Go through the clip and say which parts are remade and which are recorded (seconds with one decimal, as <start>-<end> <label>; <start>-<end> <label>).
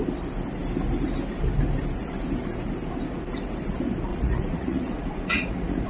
0.0-4.1 recorded; 4.1-5.9 remade